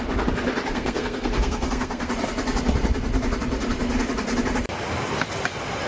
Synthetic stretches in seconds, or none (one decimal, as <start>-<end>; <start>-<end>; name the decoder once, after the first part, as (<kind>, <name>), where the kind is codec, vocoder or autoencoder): 0.7-2.1 (codec, SNAC)